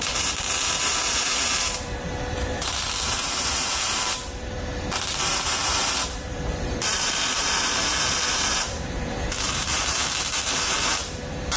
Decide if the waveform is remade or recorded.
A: remade